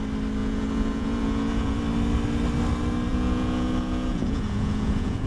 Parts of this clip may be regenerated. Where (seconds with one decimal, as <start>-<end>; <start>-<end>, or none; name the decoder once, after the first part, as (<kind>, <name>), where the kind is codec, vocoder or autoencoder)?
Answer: 0.4-1.8 (vocoder, Vocos); 3.1-5.3